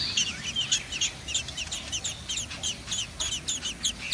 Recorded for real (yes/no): yes